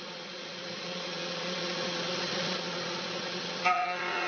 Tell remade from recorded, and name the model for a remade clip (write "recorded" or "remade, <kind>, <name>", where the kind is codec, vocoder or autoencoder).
remade, vocoder, Vocos